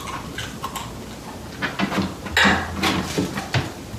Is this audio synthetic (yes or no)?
no